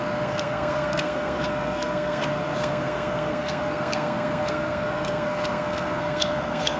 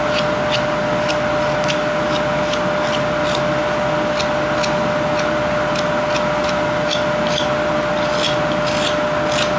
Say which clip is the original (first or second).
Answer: second